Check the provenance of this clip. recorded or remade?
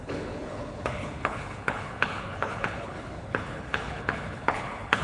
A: remade